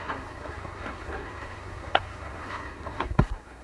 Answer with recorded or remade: remade